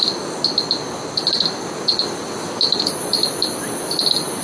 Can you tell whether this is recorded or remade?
recorded